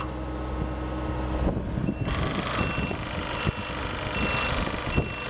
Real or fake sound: real